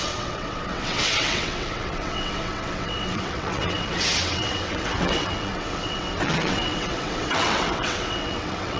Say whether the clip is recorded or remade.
remade